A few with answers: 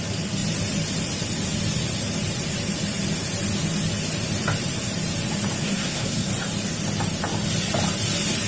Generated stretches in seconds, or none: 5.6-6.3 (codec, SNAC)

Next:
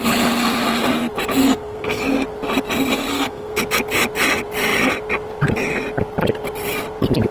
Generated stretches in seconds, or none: 1.4-2.0 (codec, SNAC); 3.1-3.6

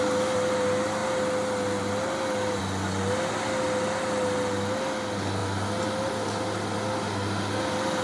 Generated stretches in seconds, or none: none

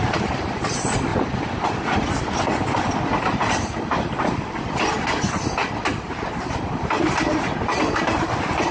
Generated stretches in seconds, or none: none

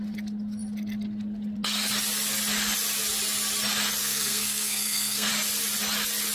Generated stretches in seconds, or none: 4.0-5.3 (codec, SNAC)

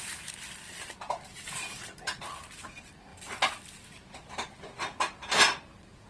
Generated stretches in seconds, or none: none